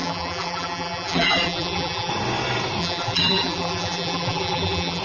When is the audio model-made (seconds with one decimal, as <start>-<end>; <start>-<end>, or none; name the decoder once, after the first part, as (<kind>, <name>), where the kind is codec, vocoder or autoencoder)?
0.0-2.1 (vocoder, BigVGAN v2); 2.8-5.0